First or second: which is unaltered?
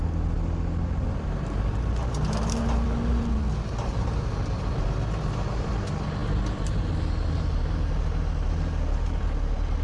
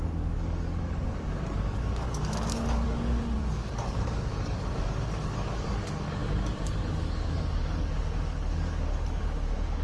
first